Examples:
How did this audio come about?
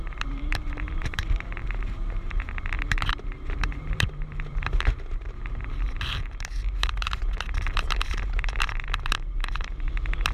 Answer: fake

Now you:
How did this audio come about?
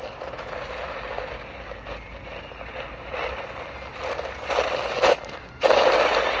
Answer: real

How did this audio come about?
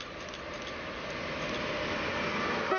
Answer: real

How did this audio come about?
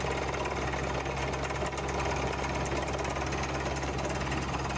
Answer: real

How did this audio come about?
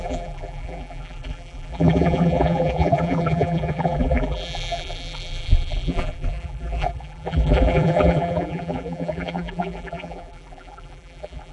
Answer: fake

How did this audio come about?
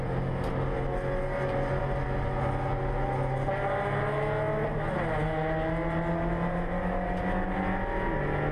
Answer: real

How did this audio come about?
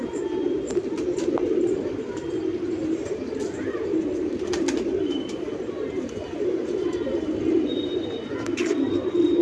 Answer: fake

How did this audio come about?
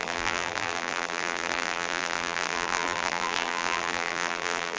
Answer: fake